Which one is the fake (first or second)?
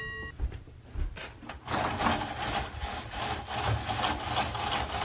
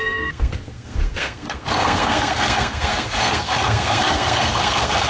second